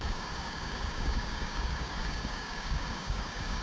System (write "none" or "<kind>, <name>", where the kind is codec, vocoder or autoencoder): codec, DAC